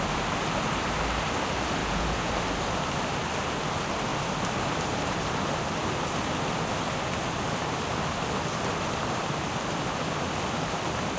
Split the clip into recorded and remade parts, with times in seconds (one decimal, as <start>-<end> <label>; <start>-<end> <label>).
0.0-1.8 recorded; 1.8-2.3 remade; 2.3-11.2 recorded